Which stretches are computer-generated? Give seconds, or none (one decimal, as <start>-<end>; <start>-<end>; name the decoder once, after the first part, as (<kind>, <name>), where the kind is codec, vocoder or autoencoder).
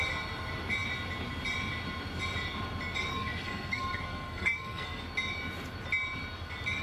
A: 3.1-5.0 (codec, SNAC)